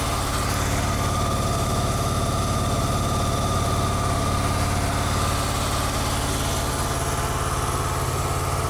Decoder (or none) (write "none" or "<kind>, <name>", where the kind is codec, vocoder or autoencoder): none